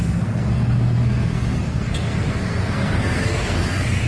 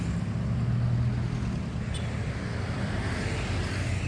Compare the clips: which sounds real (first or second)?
second